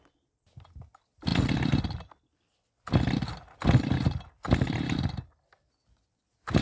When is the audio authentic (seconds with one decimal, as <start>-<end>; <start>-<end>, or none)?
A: 0.0-6.6